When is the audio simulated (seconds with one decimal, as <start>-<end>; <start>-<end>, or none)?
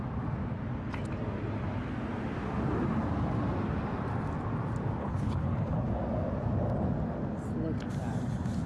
5.0-5.9